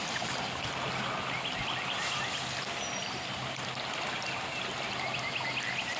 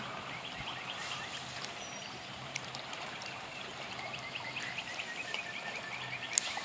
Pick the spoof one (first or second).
second